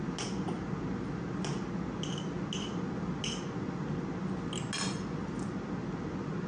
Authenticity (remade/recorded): recorded